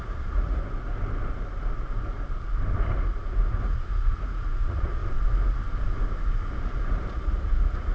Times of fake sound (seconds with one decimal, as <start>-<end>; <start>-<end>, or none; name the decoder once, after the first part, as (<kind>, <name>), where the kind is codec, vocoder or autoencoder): 0.0-0.6 (vocoder, Vocos); 3.6-5.0; 7.1-7.9